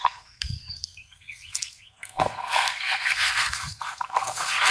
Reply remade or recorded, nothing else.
remade